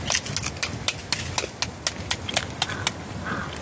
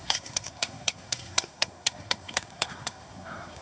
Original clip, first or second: first